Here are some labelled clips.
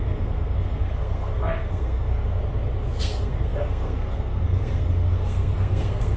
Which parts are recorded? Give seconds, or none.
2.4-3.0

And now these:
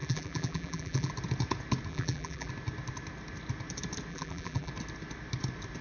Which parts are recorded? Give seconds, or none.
1.1-1.9; 2.5-4.1; 4.7-5.8

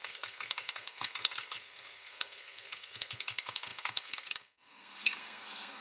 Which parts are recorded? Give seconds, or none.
none

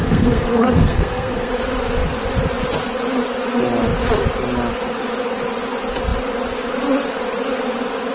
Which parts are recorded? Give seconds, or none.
1.5-8.1